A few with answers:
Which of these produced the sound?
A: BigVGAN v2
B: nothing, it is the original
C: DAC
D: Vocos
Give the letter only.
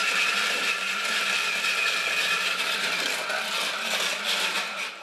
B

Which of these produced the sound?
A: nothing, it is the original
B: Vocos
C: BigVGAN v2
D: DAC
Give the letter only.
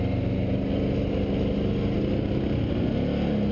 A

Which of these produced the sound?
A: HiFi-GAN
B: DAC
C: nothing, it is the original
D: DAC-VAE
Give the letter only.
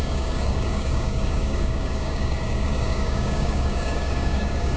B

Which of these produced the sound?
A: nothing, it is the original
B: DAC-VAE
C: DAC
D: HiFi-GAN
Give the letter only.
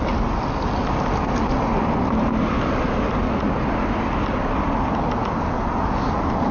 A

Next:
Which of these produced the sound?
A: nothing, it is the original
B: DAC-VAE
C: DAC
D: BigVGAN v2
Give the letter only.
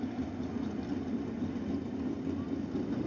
A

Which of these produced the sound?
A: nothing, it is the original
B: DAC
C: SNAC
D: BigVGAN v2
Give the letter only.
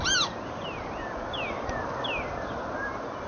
A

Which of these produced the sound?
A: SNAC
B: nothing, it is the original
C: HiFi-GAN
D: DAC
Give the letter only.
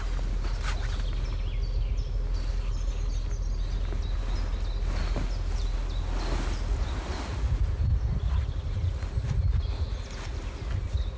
B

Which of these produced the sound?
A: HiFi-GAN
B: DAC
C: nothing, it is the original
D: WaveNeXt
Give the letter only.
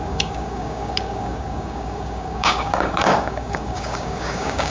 B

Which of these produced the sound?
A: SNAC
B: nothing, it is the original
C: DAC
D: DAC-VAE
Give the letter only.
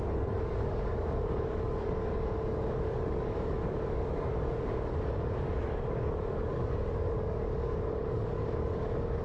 C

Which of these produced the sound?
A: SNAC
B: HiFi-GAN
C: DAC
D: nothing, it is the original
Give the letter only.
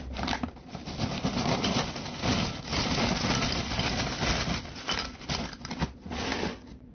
D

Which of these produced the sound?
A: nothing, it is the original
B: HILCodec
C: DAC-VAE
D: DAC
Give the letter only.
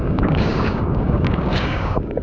D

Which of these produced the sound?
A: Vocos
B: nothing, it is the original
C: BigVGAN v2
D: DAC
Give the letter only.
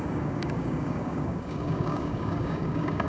D